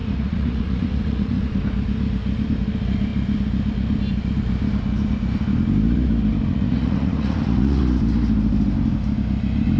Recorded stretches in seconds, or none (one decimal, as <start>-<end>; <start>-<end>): 1.6-6.5; 7.8-9.8